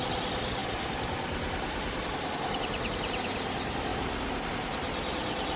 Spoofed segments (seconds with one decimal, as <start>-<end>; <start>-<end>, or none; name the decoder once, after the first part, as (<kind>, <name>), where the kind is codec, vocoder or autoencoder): none